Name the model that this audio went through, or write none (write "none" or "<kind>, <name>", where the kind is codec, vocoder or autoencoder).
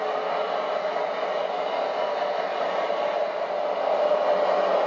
none